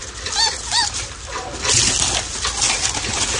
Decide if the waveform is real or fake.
real